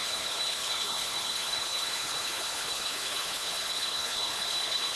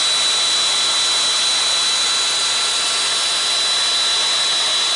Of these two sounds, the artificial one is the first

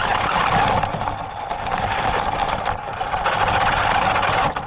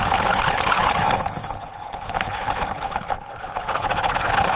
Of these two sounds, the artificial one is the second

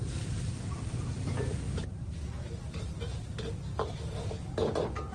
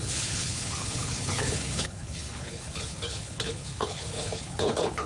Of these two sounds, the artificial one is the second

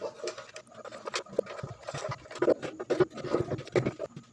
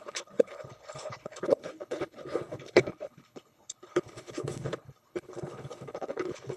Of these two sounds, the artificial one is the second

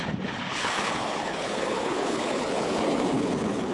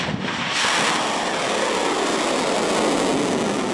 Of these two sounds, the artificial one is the first